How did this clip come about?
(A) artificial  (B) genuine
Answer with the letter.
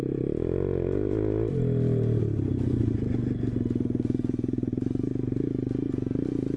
B